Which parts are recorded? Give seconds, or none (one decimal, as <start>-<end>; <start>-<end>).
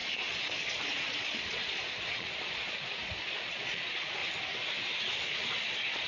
4.2-5.3